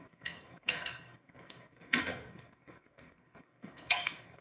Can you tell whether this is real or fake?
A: fake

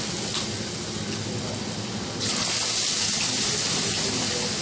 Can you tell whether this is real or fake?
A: real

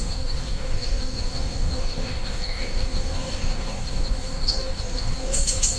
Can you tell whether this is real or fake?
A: fake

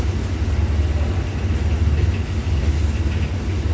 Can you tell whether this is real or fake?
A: real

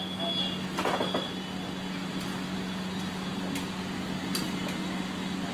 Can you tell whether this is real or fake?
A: real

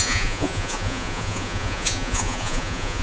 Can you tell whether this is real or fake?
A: fake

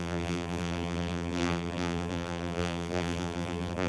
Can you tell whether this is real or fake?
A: fake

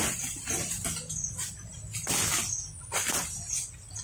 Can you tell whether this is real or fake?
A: real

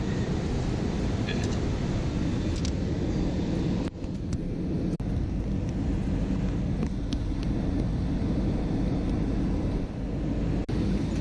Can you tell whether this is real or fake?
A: real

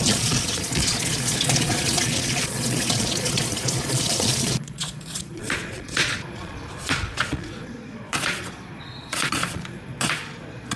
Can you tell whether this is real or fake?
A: fake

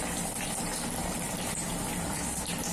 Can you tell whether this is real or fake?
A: real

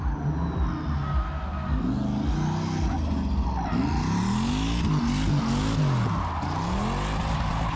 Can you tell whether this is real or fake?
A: real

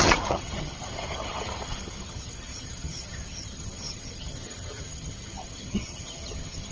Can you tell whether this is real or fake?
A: fake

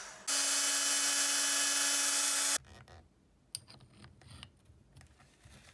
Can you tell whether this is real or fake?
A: real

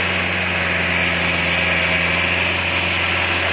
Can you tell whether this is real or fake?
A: real